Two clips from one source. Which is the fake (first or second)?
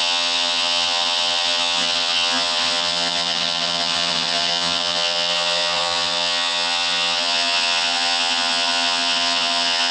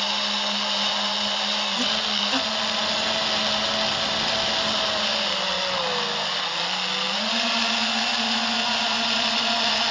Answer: first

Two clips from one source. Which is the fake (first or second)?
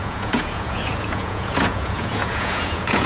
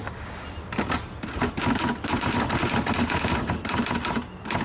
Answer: first